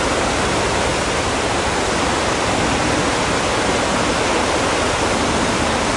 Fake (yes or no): no